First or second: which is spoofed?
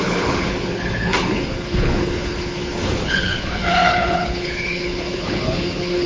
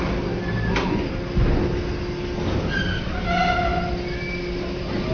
first